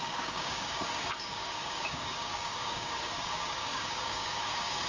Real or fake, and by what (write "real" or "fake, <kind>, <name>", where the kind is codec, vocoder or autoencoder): fake, codec, DAC